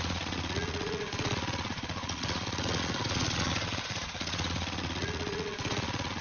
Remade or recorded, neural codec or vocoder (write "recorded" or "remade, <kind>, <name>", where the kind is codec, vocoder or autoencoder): remade, vocoder, Vocos